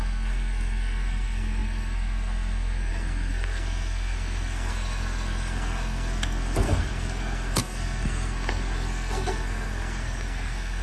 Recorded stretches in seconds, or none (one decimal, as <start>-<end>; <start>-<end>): none